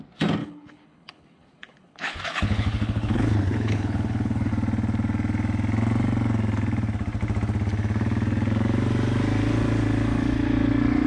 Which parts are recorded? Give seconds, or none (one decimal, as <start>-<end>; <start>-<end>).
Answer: 0.0-0.4; 4.5-11.1